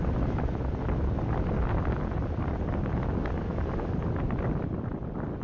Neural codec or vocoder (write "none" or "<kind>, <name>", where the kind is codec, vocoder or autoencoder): none